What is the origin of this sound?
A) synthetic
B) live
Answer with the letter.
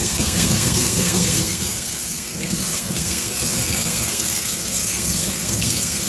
A